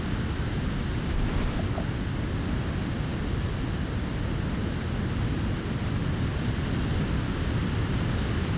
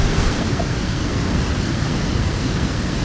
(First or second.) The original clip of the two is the first